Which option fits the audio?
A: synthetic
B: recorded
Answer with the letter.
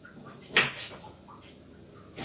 B